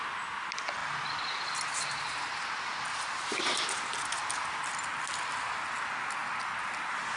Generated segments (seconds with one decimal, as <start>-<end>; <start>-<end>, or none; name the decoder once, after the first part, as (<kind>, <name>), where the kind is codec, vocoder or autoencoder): none